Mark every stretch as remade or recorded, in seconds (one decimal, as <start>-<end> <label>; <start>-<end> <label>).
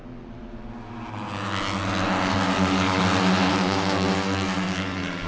0.0-2.3 recorded; 2.3-3.0 remade; 3.0-3.5 recorded; 3.5-5.3 remade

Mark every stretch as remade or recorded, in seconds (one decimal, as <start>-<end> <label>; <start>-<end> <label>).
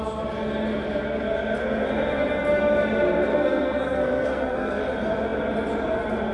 0.0-3.3 recorded; 3.3-4.8 remade; 4.8-6.3 recorded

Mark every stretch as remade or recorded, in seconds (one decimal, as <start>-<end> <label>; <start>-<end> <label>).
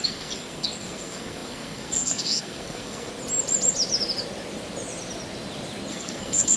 0.0-3.1 remade; 3.1-5.9 recorded; 5.9-6.6 remade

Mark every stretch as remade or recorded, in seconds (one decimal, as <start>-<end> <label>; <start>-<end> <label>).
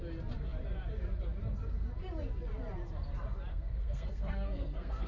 0.0-3.5 recorded; 3.5-5.1 remade